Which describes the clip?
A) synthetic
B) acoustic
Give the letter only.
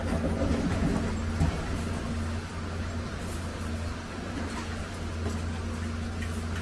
B